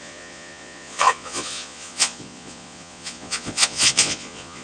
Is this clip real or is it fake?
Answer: fake